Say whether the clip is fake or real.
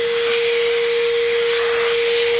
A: real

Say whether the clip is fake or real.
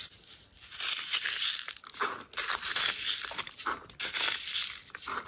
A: real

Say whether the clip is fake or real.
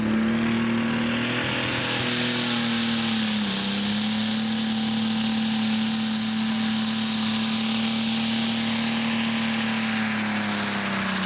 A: real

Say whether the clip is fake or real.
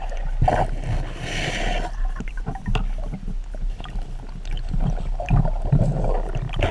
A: real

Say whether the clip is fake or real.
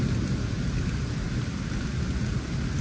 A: real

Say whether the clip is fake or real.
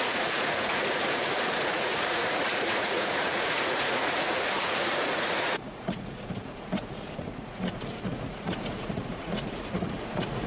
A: fake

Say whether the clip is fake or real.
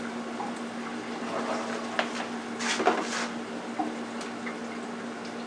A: real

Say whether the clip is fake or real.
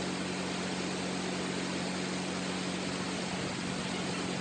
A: real